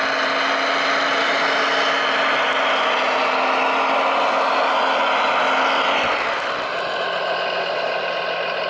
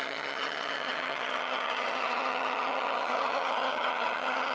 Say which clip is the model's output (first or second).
second